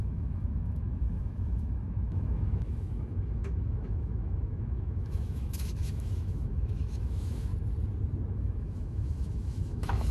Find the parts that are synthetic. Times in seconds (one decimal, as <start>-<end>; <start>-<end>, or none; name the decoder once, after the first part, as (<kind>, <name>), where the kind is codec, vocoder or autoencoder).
0.0-7.5 (autoencoder, DAC-VAE); 8.3-10.1